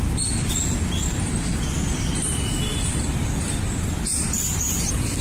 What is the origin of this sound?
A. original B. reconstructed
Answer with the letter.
A